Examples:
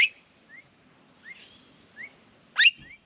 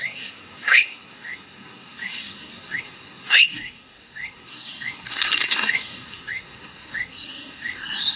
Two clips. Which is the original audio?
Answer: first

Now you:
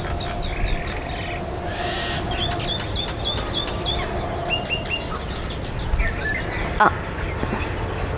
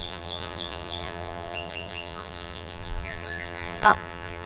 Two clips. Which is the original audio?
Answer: first